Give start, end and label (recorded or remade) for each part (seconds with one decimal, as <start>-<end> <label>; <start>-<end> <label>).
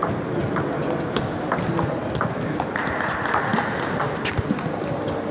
0.0-5.3 recorded